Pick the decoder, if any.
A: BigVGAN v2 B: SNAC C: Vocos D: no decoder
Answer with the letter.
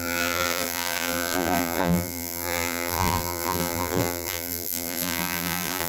A